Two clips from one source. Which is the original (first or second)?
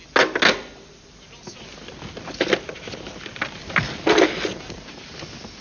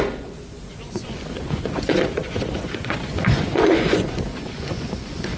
first